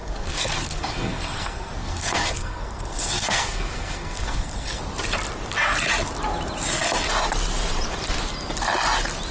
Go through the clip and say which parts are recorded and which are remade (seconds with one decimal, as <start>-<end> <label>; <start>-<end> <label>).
0.0-4.8 remade; 4.8-9.3 recorded